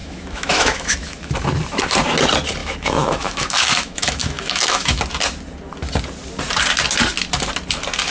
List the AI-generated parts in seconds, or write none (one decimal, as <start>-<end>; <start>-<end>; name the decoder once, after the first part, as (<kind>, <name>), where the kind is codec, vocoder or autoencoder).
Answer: 0.0-1.3 (autoencoder, DAC-VAE); 2.6-5.0